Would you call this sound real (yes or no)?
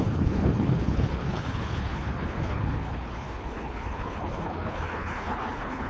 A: no